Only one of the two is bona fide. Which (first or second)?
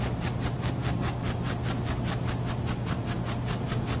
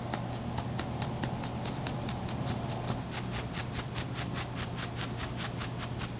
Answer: second